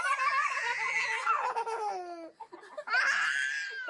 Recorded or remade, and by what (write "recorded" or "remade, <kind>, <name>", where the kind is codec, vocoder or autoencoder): recorded